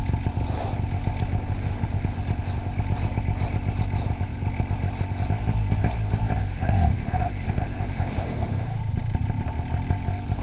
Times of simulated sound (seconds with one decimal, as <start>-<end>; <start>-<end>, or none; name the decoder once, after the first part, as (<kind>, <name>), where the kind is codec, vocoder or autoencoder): 1.6-2.2 (autoencoder, DAC-VAE); 6.4-8.8